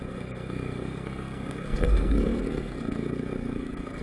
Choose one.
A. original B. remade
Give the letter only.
B